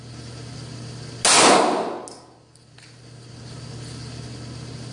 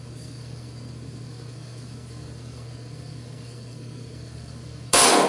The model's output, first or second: second